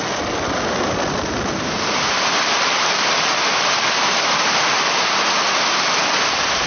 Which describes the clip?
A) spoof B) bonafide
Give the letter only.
B